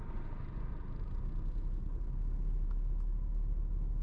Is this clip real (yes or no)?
yes